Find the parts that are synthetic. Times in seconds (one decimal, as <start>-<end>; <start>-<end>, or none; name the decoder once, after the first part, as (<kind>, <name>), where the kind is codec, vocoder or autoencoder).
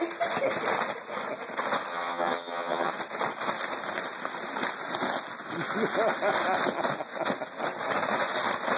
1.9-2.9 (vocoder, HiFi-GAN)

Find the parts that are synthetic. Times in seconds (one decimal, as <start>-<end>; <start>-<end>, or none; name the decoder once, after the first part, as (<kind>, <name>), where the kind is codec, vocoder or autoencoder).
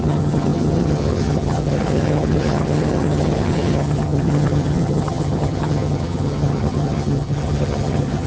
0.0-8.3 (vocoder, HiFi-GAN)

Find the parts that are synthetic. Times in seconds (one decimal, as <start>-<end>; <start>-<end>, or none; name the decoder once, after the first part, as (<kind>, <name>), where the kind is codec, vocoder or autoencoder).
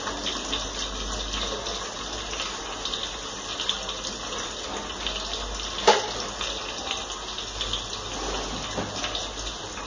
none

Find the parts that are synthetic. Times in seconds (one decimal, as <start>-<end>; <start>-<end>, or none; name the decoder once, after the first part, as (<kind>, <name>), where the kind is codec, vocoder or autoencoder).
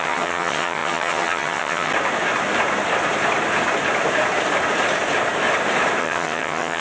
0.0-1.9 (vocoder, HiFi-GAN); 6.0-6.8